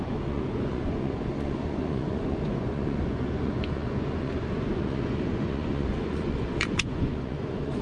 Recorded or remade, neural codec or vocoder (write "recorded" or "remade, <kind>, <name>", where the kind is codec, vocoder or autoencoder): remade, vocoder, Vocos